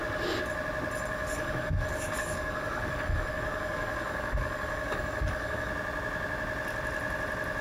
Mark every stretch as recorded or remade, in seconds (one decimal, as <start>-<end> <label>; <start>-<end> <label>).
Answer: 0.0-1.1 recorded; 1.1-5.7 remade; 5.7-7.6 recorded